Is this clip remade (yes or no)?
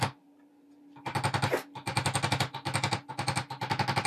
no